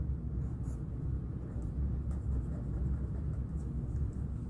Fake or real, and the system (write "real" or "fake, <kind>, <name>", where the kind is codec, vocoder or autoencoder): real